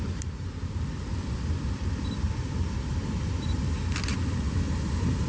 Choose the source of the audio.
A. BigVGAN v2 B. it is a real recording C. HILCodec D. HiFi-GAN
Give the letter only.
A